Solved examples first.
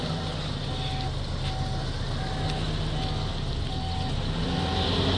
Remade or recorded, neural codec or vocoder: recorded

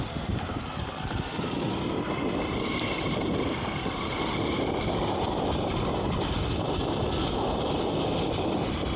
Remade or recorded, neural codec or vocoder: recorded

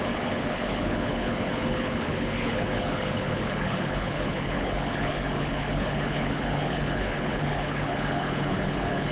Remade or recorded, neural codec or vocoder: remade, codec, HILCodec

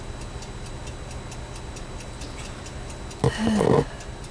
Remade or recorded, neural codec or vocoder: recorded